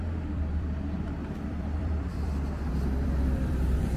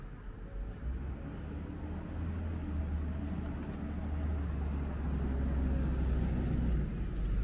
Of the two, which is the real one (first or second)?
second